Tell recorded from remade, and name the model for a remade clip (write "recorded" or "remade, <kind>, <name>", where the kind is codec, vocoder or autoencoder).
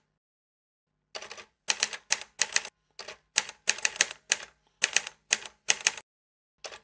recorded